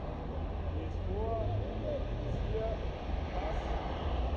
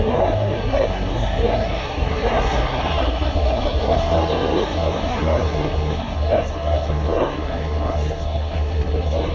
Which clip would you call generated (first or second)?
second